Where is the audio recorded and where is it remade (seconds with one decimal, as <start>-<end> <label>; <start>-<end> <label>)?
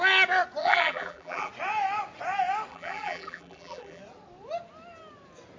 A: 0.0-0.6 recorded; 0.6-1.5 remade; 1.5-2.7 recorded; 2.7-4.0 remade; 4.0-5.6 recorded